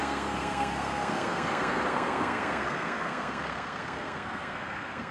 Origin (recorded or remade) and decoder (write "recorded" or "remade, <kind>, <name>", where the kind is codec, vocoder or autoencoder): remade, codec, SNAC